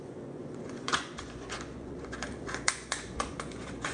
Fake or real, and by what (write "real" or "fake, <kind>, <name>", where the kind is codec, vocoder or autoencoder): fake, vocoder, Vocos